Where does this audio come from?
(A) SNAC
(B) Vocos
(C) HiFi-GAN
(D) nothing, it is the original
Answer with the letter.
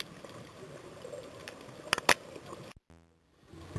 D